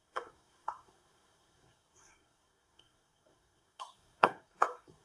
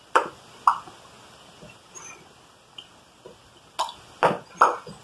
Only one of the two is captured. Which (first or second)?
second